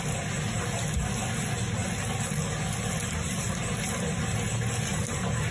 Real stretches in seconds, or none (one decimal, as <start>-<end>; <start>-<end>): 0.0-5.5